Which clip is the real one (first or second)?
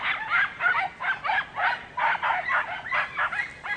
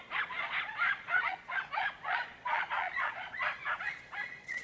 first